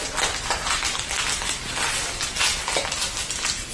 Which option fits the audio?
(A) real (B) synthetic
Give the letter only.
A